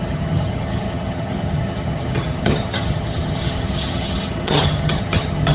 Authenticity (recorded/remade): remade